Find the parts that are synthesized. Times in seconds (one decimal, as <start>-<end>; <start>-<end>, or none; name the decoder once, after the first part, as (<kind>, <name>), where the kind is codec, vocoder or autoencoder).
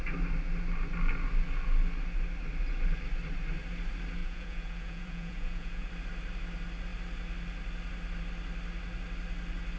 4.2-5.9 (vocoder, Vocos)